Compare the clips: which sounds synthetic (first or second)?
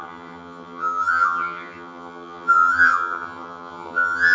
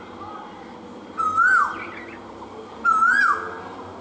first